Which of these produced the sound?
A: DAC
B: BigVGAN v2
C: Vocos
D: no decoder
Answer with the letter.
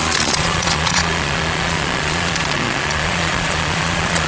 C